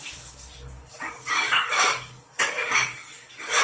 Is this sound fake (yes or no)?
yes